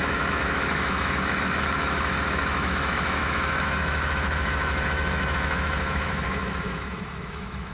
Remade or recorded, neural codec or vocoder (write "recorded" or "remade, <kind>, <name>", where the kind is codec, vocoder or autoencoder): remade, autoencoder, DAC-VAE